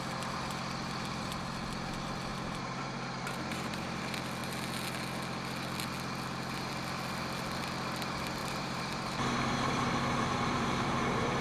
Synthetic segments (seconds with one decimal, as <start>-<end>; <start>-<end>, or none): 2.3-4.0; 8.4-11.4

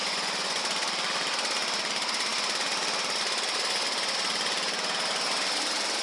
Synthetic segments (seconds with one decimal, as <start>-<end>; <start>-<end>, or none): 0.0-0.6

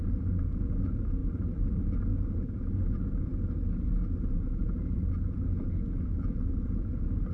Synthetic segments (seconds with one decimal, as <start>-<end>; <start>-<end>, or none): 0.0-1.2; 2.0-3.3; 4.4-7.3

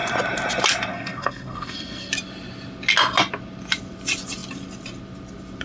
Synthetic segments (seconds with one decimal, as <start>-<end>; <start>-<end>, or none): 0.9-2.1

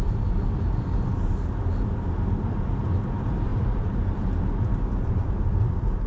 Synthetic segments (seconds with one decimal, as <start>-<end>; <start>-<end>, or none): 0.0-1.1; 2.4-6.1

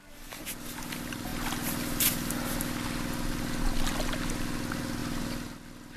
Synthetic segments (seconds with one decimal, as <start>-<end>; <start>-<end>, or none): none

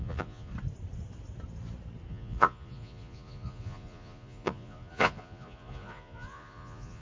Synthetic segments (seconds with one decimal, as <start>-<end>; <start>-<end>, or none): 0.0-0.5; 2.1-7.0